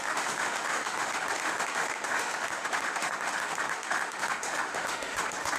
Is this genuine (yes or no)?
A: no